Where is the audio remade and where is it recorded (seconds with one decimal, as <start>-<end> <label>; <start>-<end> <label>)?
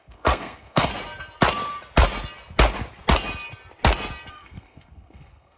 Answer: 0.0-0.9 remade; 0.9-4.3 recorded; 4.3-5.6 remade